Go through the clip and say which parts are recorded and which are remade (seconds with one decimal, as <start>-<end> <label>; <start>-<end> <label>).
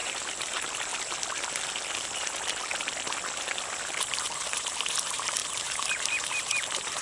0.0-0.9 remade; 0.9-3.9 recorded; 3.9-7.0 remade